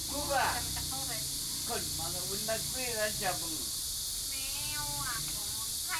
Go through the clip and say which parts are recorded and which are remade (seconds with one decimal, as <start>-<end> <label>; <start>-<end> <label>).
0.0-6.0 recorded